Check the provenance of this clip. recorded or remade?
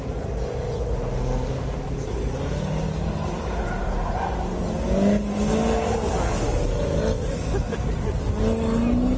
recorded